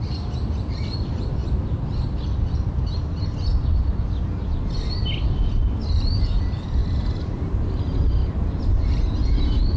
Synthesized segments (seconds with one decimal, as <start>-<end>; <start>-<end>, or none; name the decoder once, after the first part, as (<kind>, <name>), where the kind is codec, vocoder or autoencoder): none